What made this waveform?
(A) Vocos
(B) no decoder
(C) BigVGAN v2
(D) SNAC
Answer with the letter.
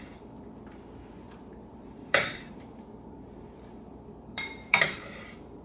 C